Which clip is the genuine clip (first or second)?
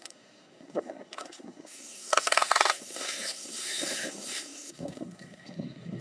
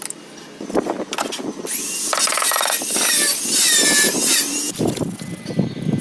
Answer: second